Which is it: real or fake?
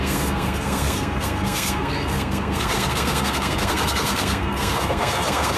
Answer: fake